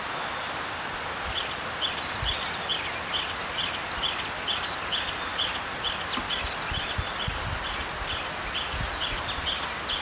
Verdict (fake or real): real